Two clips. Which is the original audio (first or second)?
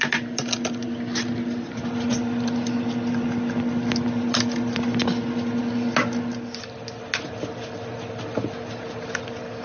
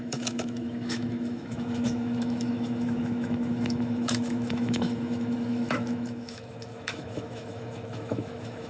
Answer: first